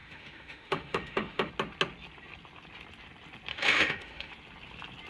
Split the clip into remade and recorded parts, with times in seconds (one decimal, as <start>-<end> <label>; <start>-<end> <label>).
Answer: 0.0-1.5 remade; 1.5-3.5 recorded; 3.5-4.3 remade; 4.3-5.1 recorded